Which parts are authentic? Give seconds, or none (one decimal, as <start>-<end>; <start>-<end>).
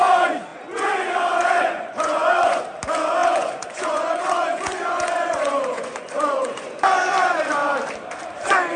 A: 0.0-0.5; 2.6-3.2; 6.8-8.8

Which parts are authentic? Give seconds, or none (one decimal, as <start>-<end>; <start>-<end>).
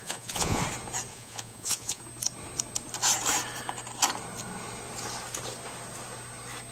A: 0.6-1.1; 2.0-6.7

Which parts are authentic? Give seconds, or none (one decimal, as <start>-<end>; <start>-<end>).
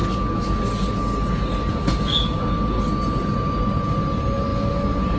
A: 0.0-5.2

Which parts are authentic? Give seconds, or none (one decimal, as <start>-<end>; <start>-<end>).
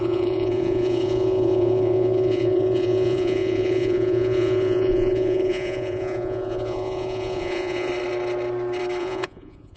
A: 7.9-9.0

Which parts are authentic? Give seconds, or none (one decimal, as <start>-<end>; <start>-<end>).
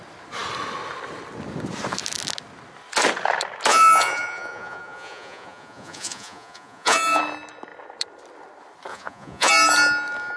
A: 0.0-3.7; 7.2-8.9; 9.5-10.4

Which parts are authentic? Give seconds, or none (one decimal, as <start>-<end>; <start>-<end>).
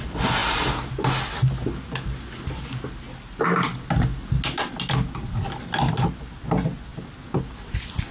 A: 0.0-8.1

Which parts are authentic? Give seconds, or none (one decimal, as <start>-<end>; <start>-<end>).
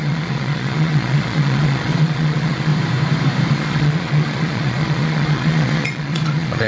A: 2.7-3.5